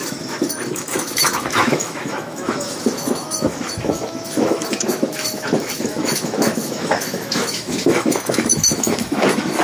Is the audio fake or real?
fake